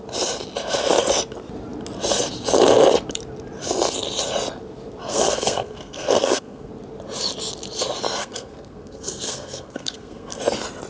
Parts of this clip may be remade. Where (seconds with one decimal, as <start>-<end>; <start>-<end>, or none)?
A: 5.1-6.7; 8.2-10.4